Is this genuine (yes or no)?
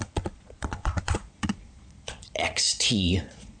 no